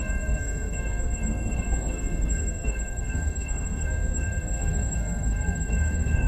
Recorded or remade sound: remade